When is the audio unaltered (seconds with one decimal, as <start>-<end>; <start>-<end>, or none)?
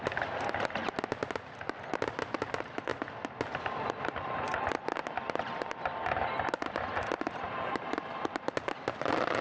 0.0-9.4